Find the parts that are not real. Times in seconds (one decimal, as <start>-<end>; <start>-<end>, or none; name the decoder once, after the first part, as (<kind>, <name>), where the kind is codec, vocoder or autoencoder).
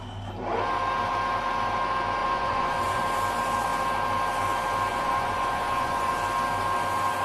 2.2-3.0 (vocoder, Vocos); 4.9-6.1